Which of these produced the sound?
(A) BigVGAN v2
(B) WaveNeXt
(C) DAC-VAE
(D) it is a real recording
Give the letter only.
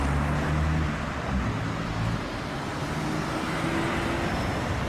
D